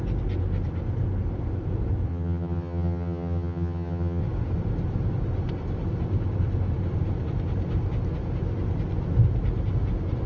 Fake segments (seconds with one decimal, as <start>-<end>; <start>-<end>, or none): 2.1-4.2